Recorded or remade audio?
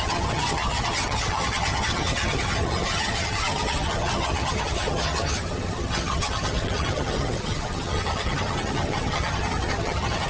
remade